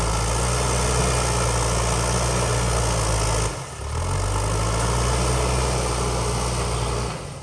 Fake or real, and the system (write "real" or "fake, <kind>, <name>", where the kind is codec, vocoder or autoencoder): real